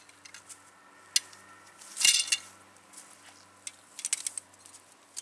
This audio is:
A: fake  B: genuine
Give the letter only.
B